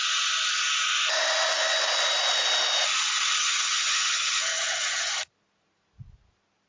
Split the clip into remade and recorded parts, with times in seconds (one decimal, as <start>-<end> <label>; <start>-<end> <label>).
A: 0.0-3.4 recorded; 3.4-5.3 remade; 5.3-6.7 recorded